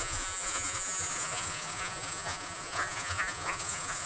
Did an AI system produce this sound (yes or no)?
yes